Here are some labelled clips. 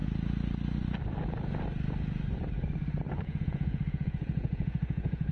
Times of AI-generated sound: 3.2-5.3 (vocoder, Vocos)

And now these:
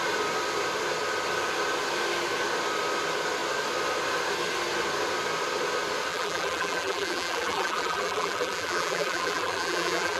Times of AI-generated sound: 6.1-10.2 (vocoder, BigVGAN v2)

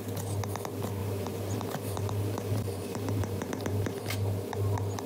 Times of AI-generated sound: 1.0-4.1 (vocoder, BigVGAN v2)

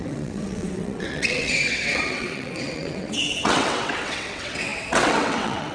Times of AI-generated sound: 0.0-5.7 (vocoder, WaveNeXt)

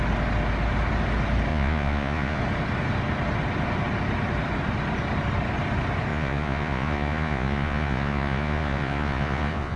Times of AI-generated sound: 1.5-2.4 (vocoder, Vocos); 6.1-9.8

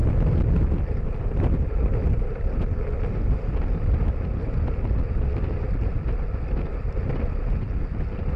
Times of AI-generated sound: none

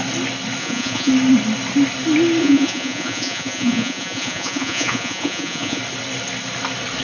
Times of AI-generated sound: 0.6-1.1 (vocoder, Vocos); 2.4-5.8

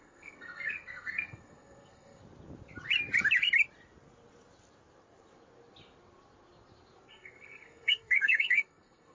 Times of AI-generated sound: 0.0-2.2 (codec, SNAC); 7.1-9.1